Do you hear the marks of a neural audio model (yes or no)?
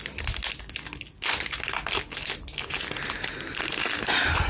no